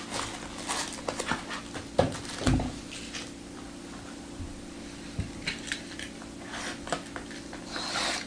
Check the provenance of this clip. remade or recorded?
recorded